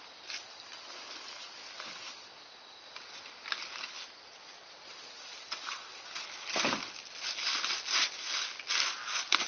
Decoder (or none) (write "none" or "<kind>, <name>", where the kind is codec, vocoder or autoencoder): none